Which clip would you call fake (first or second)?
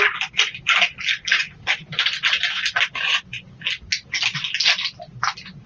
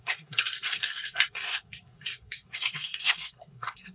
second